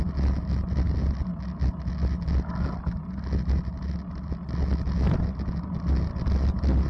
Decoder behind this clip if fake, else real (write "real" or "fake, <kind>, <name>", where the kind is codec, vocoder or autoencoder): real